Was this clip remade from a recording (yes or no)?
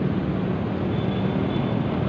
no